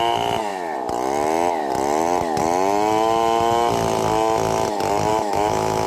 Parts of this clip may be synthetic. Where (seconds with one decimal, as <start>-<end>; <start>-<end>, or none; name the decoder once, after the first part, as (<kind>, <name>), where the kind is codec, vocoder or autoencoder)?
5.1-5.9 (autoencoder, DAC-VAE)